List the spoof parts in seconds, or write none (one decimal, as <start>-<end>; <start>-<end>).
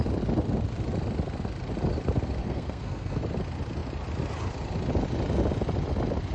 2.4-3.2